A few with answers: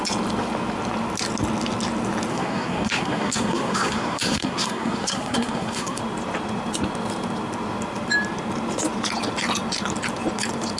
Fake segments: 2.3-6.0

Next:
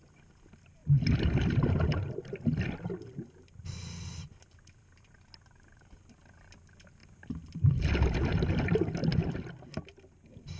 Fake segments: none

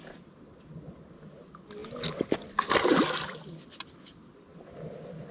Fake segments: none

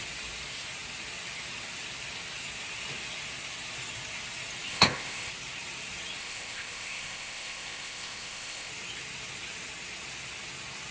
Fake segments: 4.7-5.3; 6.2-8.7

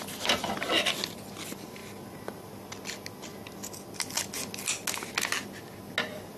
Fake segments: 1.8-2.5

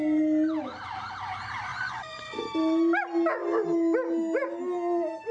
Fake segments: 1.7-2.4

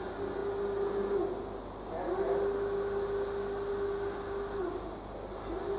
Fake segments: none